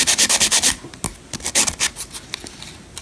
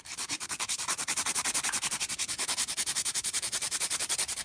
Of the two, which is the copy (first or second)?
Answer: second